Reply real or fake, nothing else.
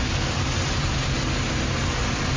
real